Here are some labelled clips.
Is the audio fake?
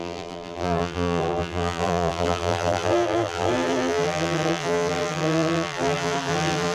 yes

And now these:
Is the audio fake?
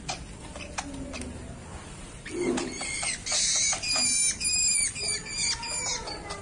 no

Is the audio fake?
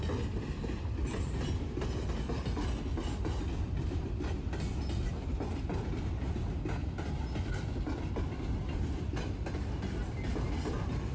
no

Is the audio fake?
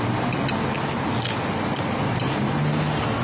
no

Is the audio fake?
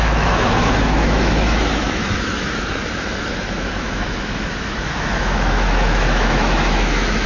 yes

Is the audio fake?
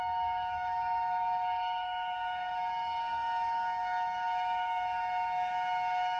yes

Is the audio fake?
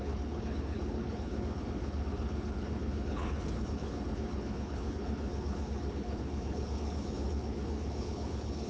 yes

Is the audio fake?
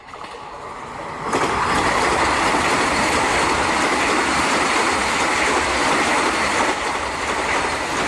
no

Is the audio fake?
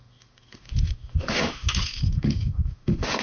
yes